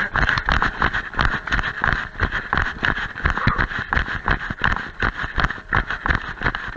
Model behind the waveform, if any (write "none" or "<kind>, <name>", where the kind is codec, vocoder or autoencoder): none